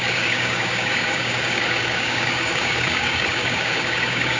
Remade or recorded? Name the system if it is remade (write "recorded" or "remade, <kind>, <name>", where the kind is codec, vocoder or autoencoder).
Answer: remade, codec, DAC